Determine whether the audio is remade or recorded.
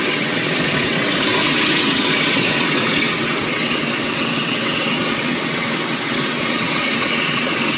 remade